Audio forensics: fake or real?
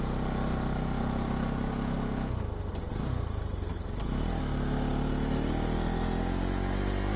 real